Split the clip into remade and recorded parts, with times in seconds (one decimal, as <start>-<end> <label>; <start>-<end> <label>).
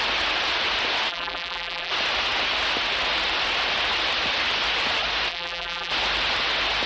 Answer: 0.0-1.1 recorded; 1.1-1.9 remade; 1.9-5.3 recorded; 5.3-5.9 remade; 5.9-6.9 recorded